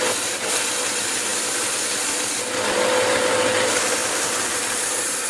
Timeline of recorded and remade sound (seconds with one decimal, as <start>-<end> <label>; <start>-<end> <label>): 0.0-1.3 recorded; 1.3-2.0 remade; 2.0-4.0 recorded; 4.0-4.8 remade; 4.8-5.3 recorded